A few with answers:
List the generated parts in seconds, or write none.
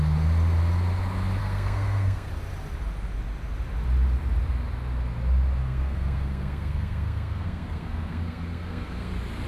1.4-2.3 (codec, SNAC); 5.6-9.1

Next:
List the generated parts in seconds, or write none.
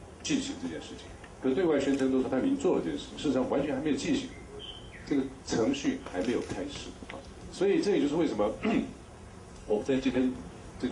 9.6-10.2 (codec, SNAC)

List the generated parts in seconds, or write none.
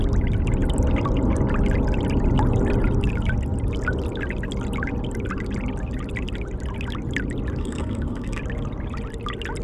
7.6-8.4 (codec, SNAC)